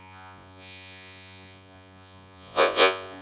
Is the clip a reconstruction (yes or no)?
yes